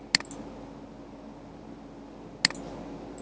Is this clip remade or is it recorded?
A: recorded